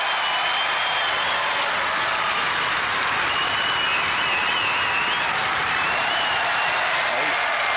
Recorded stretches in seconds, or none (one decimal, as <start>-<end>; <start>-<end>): 0.0-5.4; 6.3-7.8